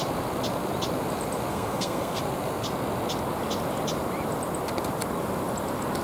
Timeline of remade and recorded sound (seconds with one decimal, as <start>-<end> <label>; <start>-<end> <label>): 0.0-1.5 recorded; 1.5-2.2 remade; 2.2-6.0 recorded